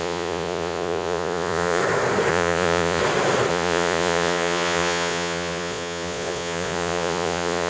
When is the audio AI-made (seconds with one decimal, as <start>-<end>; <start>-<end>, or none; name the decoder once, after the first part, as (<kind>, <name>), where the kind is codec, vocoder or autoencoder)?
0.0-1.8 (vocoder, Vocos); 2.3-3.0; 3.5-7.7